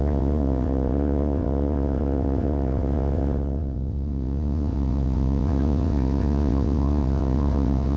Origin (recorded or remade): remade